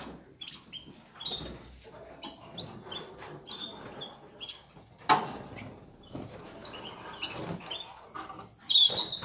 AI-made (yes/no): no